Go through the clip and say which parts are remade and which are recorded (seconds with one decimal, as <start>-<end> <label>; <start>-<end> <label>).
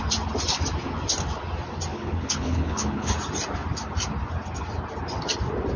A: 0.0-1.9 recorded; 1.9-3.1 remade; 3.1-5.8 recorded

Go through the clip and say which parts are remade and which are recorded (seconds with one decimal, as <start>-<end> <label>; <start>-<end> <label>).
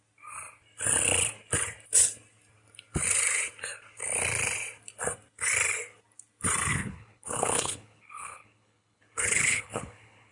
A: 0.0-6.7 recorded; 6.7-10.3 remade